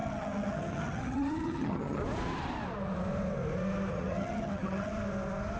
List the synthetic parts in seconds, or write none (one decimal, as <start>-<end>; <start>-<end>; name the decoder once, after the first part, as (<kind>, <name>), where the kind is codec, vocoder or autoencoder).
0.0-2.0 (vocoder, HiFi-GAN); 3.9-4.9